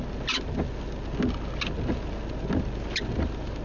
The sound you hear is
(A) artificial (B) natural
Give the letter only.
B